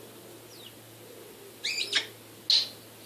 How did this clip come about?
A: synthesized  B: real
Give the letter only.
B